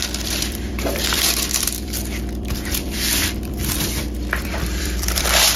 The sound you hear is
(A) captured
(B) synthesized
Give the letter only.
B